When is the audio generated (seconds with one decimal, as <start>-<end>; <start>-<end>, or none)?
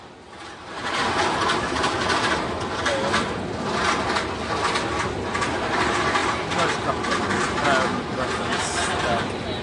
none